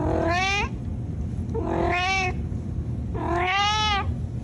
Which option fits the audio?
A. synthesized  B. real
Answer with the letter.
B